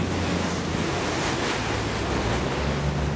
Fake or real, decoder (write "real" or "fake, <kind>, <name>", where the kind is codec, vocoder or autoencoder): real